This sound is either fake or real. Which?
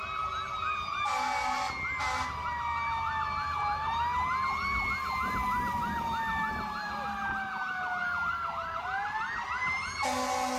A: real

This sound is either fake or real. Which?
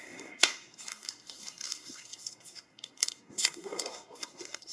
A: fake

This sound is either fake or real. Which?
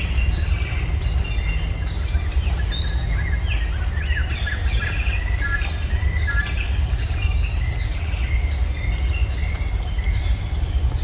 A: real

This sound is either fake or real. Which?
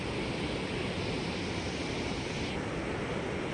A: real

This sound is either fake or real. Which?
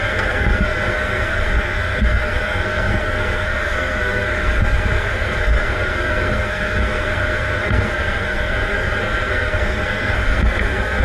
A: fake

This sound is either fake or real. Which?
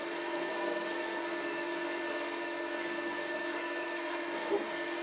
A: fake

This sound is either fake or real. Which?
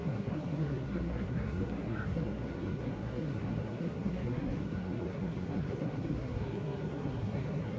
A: fake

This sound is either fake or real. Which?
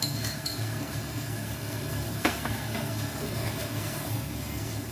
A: fake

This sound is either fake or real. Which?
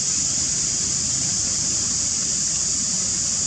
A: real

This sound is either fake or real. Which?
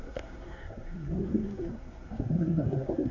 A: fake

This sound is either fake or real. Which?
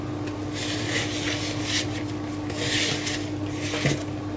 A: real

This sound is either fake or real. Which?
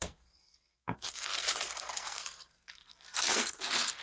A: fake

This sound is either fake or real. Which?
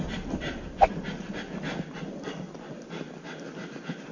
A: real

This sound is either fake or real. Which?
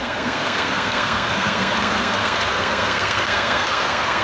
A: fake